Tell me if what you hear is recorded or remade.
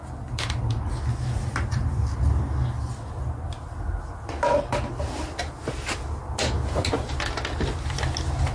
recorded